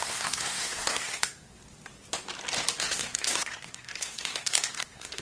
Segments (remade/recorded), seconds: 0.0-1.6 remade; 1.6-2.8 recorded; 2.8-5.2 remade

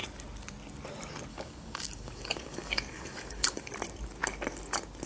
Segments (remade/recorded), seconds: 0.0-1.3 recorded; 1.3-3.7 remade; 3.7-5.1 recorded

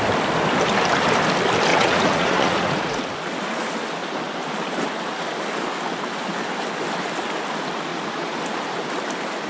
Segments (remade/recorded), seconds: 0.0-1.7 recorded; 1.7-3.0 remade; 3.0-7.9 recorded; 7.9-8.4 remade; 8.4-9.5 recorded

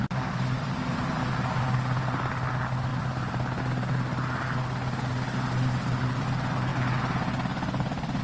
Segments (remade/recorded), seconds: 0.0-8.2 recorded

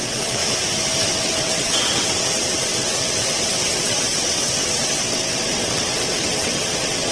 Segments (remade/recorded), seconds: 0.0-0.4 remade; 0.4-1.0 recorded; 1.0-7.1 remade

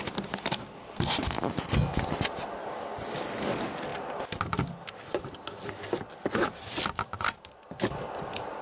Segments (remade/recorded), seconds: 0.0-8.6 recorded

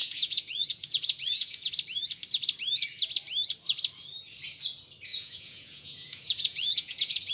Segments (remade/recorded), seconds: 0.0-1.7 remade; 1.7-5.1 recorded; 5.1-7.3 remade

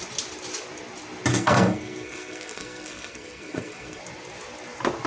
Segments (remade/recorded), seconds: 0.0-1.3 recorded; 1.3-4.0 remade; 4.0-5.1 recorded